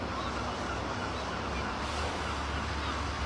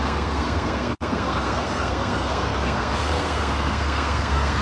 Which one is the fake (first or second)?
second